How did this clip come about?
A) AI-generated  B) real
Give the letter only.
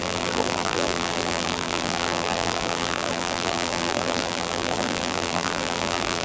A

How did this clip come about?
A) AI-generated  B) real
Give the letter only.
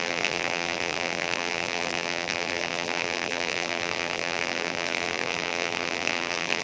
A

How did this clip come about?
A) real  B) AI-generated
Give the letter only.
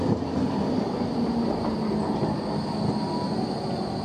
A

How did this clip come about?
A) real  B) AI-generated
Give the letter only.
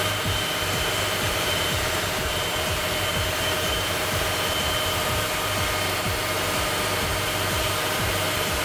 B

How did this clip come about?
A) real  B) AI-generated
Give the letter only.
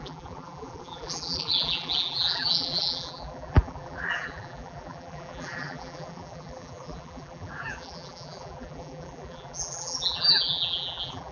B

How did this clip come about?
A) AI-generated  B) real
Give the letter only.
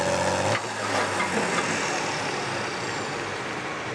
B